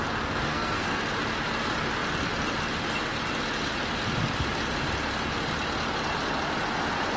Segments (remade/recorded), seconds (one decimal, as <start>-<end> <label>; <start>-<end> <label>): 0.0-0.5 recorded; 0.5-1.0 remade; 1.0-7.2 recorded